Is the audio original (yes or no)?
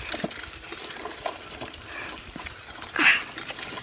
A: yes